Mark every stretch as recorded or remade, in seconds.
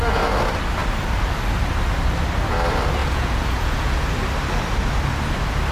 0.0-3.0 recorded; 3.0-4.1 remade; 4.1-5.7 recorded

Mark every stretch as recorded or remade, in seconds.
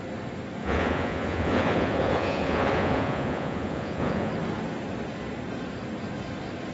0.0-0.6 recorded; 0.6-4.3 remade; 4.3-6.7 recorded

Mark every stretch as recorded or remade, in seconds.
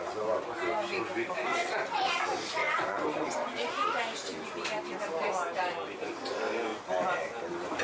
0.0-1.5 recorded; 1.5-2.2 remade; 2.2-2.6 recorded; 2.6-3.7 remade; 3.7-7.8 recorded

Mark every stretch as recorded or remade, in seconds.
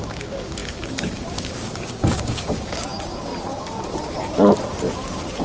0.0-3.3 remade; 3.3-5.4 recorded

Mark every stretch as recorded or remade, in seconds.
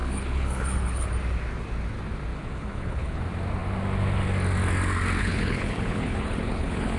0.0-1.1 remade; 1.1-2.3 recorded; 2.3-3.2 remade; 3.2-5.2 recorded; 5.2-7.0 remade